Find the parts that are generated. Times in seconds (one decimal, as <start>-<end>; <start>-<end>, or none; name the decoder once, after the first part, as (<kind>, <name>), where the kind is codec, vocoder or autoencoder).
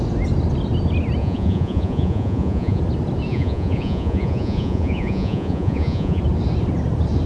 1.2-2.8 (vocoder, Vocos); 3.3-6.2